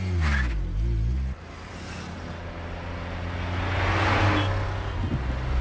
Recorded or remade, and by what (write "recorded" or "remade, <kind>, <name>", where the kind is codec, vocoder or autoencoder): recorded